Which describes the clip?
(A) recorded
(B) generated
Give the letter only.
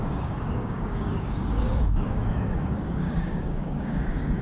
B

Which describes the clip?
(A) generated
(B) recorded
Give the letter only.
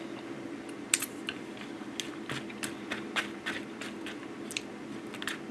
B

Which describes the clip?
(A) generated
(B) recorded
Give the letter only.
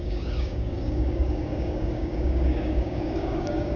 A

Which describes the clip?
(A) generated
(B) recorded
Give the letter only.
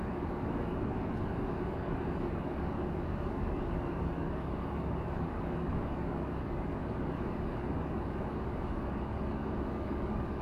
A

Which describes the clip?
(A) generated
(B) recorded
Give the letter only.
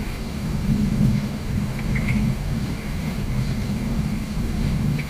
A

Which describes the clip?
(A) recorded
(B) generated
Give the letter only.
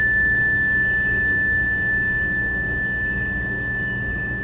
B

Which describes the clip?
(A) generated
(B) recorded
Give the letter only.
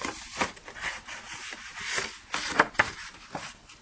B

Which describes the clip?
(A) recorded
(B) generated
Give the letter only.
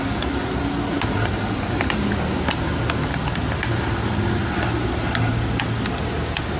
A